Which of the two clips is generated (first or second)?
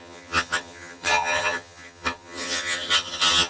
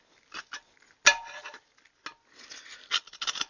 first